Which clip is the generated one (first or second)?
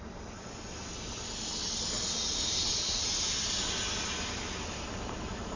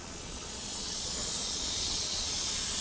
second